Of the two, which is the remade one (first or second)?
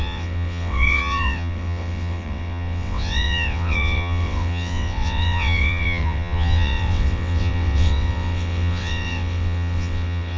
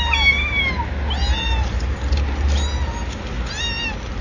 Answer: first